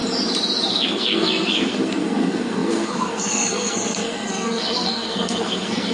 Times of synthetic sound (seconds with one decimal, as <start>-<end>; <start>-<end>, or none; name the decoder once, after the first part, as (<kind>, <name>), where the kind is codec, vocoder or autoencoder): 0.7-5.9 (codec, SNAC)